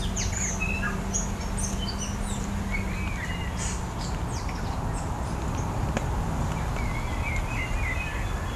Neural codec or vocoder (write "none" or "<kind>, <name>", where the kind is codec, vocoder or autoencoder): none